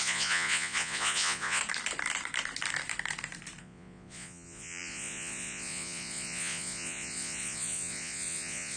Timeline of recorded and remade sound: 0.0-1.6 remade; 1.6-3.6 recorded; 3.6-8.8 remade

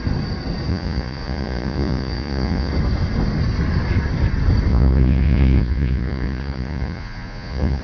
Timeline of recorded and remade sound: 0.0-0.7 recorded; 0.7-2.7 remade; 2.7-4.7 recorded; 4.7-7.8 remade

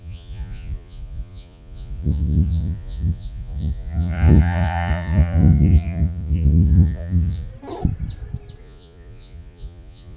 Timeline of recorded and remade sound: 0.0-7.5 remade; 7.5-8.6 recorded; 8.6-10.2 remade

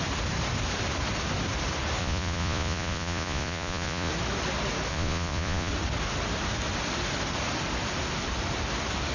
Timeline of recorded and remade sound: 0.0-2.0 recorded; 2.0-4.1 remade; 4.1-4.9 recorded; 4.9-5.7 remade; 5.7-9.1 recorded

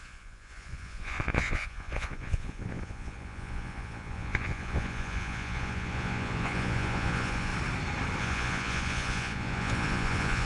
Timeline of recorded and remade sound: 0.0-7.5 remade; 7.5-8.2 recorded; 8.2-10.5 remade

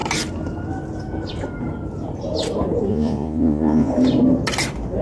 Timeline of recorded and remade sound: 0.0-2.9 recorded; 2.9-3.9 remade; 3.9-5.0 recorded

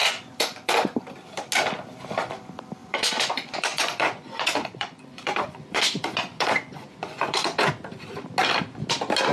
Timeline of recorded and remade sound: 0.0-1.0 remade; 1.0-2.8 recorded; 2.8-7.7 remade; 7.7-9.3 recorded